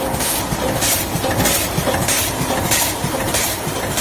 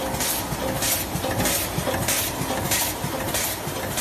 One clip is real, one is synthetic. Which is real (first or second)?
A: second